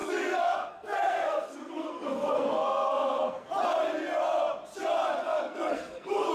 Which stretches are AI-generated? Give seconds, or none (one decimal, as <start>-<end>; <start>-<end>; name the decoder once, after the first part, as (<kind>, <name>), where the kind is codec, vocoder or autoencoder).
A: 0.0-3.5 (codec, SNAC); 5.2-6.3